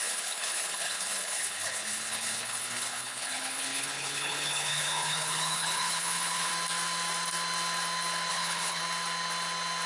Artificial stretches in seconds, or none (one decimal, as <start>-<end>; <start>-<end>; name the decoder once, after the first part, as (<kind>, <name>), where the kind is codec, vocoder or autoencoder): 0.0-6.5 (codec, HILCodec); 8.3-8.8